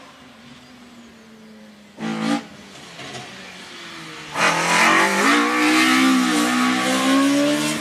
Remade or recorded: recorded